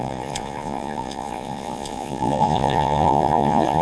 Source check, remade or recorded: remade